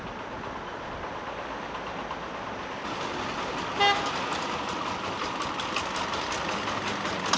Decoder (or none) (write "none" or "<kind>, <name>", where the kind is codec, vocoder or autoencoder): none